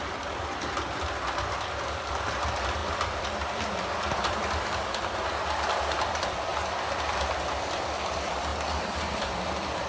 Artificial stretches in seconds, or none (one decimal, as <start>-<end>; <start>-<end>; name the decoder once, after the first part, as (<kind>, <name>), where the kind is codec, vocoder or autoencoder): 0.0-6.5 (vocoder, BigVGAN v2); 7.0-8.5; 9.0-9.9